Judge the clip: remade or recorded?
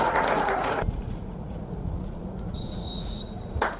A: remade